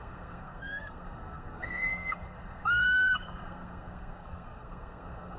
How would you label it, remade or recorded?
remade